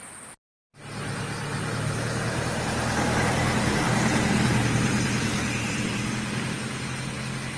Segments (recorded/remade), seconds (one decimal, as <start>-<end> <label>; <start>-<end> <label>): 0.0-1.5 recorded; 1.5-6.1 remade; 6.1-7.6 recorded